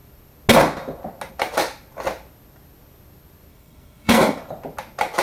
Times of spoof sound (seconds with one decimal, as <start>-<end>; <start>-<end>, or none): 3.5-4.4